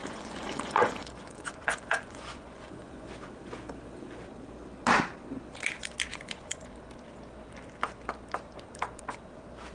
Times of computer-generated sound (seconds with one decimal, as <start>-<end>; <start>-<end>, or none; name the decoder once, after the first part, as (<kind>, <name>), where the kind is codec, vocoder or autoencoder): 0.0-3.1 (vocoder, Vocos); 6.1-6.7